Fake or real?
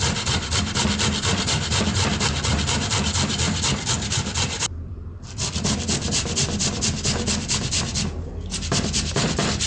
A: fake